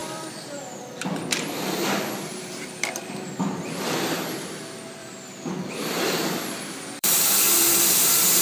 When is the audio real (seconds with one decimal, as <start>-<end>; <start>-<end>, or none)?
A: 0.8-2.3; 3.1-5.0; 8.0-8.4